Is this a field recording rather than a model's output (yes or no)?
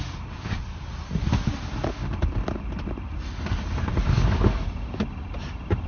yes